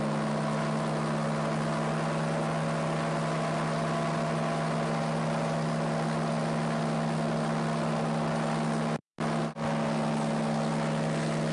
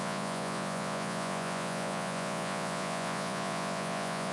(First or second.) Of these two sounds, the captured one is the first